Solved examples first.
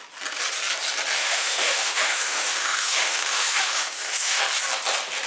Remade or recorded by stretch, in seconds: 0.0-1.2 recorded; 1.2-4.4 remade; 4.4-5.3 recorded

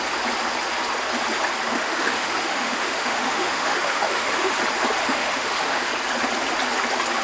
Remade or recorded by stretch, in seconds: 0.0-1.7 recorded; 1.7-4.6 remade; 4.6-5.0 recorded; 5.0-5.9 remade; 5.9-7.2 recorded

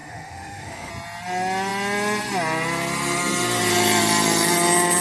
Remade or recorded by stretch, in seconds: 0.0-0.9 remade; 0.9-5.0 recorded

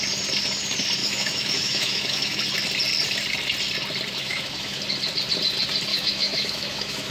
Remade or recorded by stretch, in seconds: 0.0-1.0 recorded; 1.0-2.4 remade; 2.4-4.2 recorded; 4.2-4.8 remade; 4.8-5.9 recorded; 5.9-7.1 remade

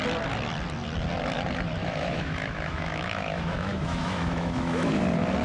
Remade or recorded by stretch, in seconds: 0.0-1.8 recorded; 1.8-5.0 remade; 5.0-5.4 recorded

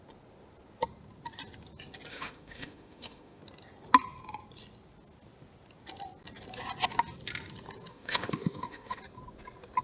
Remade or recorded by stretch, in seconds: 0.0-2.1 recorded; 2.1-3.4 remade; 3.4-7.9 recorded; 7.9-9.0 remade; 9.0-9.8 recorded

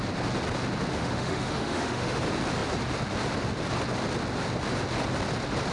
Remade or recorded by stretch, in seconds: 0.0-0.9 recorded; 0.9-2.2 remade; 2.2-5.7 recorded

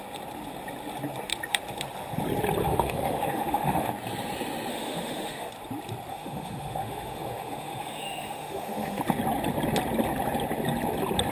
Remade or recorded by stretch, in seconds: 0.0-2.6 recorded; 2.6-3.9 remade; 3.9-4.7 recorded; 4.7-5.5 remade; 5.5-6.1 recorded; 6.1-9.0 remade; 9.0-11.3 recorded